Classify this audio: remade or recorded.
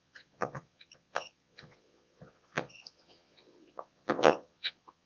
remade